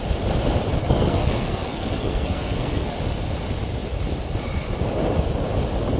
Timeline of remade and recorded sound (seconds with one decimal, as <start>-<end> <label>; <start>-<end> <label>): 0.0-0.8 recorded; 0.8-3.0 remade; 3.0-6.0 recorded